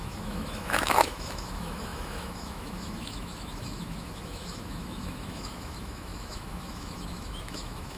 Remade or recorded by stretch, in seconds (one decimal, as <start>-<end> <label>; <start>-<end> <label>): 0.0-8.0 remade